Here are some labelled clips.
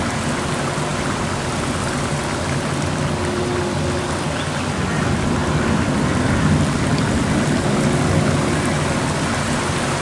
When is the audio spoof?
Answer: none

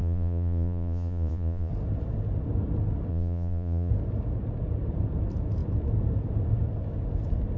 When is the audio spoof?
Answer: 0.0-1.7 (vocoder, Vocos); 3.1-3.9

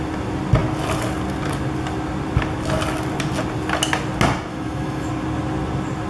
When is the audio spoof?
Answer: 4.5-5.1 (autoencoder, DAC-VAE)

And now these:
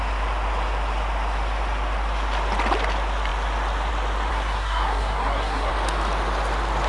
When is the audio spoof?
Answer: 4.3-5.7 (codec, SNAC)

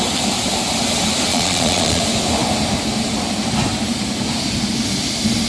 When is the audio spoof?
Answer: 1.3-2.0 (vocoder, Vocos)

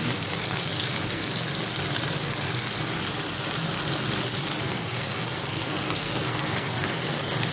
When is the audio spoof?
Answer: 0.0-1.2 (codec, SNAC); 4.6-7.5